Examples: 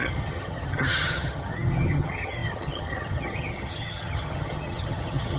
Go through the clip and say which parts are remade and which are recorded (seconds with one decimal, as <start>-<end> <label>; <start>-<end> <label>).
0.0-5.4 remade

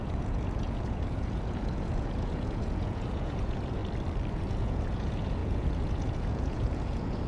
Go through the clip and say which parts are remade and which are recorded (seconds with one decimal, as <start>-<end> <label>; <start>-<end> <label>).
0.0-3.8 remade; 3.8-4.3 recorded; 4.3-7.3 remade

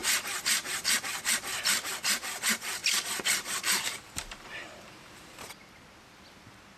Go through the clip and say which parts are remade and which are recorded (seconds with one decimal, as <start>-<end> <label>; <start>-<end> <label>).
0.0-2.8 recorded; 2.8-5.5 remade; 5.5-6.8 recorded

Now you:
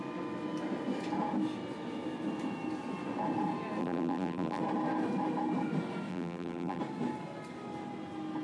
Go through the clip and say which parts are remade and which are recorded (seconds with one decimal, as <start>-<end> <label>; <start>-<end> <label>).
0.0-3.8 recorded; 3.8-4.6 remade; 4.6-6.1 recorded; 6.1-6.8 remade; 6.8-8.4 recorded

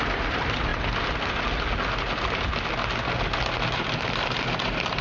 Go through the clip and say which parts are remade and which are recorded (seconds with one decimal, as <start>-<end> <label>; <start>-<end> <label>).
0.0-0.7 remade; 0.7-3.7 recorded; 3.7-5.0 remade